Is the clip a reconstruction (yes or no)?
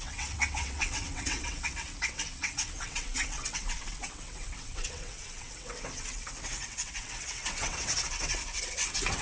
yes